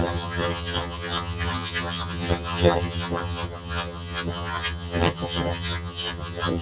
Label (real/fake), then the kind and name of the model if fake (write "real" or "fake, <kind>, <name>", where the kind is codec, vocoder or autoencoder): fake, vocoder, HiFi-GAN